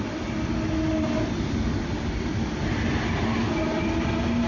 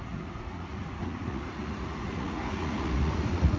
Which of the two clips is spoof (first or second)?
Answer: second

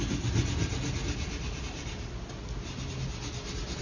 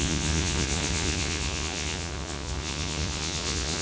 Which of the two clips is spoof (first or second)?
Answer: second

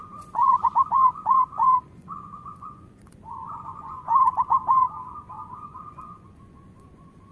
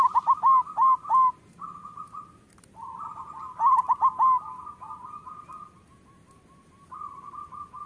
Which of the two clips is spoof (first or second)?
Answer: first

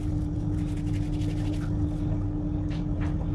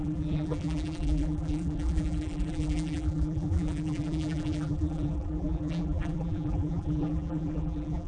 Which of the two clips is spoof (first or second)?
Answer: second